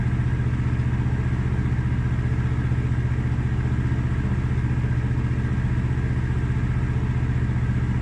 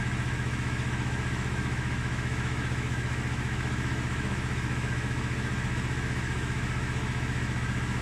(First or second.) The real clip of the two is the first